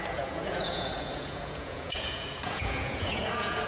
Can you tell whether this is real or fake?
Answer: fake